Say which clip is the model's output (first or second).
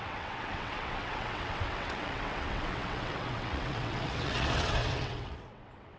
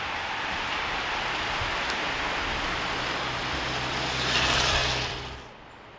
first